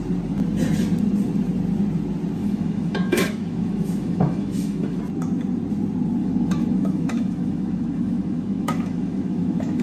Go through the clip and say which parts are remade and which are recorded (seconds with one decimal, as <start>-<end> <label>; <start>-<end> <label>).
0.0-2.4 recorded; 2.4-5.0 remade; 5.0-6.2 recorded; 6.2-9.8 remade